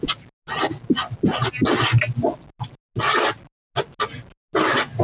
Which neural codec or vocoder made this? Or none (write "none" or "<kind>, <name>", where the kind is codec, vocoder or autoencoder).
none